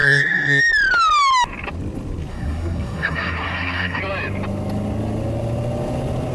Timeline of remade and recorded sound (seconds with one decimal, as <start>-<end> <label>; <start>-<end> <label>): 0.0-0.6 remade; 0.6-2.3 recorded; 2.3-4.0 remade; 4.0-6.3 recorded